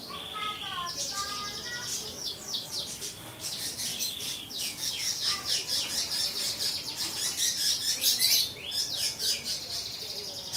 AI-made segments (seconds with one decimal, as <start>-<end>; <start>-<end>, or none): 1.9-2.7; 3.9-5.5